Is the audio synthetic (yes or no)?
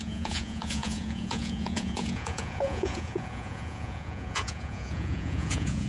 yes